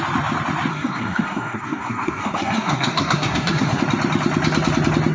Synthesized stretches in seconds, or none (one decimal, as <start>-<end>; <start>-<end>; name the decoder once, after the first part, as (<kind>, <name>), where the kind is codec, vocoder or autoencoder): 0.7-3.8 (codec, SNAC)

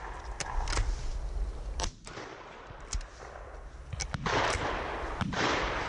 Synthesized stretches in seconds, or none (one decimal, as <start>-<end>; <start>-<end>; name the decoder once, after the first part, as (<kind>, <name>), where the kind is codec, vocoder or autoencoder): none

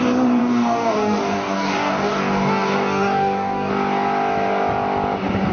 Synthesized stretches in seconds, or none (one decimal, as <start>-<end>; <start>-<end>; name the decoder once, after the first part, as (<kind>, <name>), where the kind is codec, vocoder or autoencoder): 0.4-3.7 (codec, DAC)

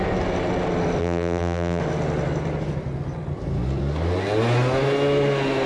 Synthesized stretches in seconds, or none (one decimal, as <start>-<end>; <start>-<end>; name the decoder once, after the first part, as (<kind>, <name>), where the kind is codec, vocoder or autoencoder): 1.0-1.8 (vocoder, BigVGAN v2)

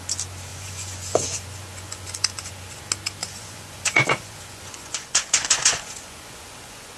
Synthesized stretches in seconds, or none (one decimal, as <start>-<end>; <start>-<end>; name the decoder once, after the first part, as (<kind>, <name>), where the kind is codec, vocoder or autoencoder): 0.5-2.8 (vocoder, Vocos); 3.2-7.0

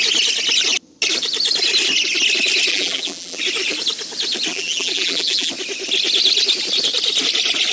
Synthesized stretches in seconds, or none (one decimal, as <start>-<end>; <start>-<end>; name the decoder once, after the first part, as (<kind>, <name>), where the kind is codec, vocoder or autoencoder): 2.7-3.4 (vocoder, BigVGAN v2); 4.5-5.5

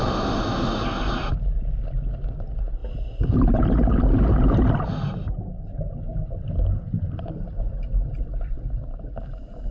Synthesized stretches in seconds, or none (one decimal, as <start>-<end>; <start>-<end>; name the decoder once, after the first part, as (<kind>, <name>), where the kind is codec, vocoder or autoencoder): none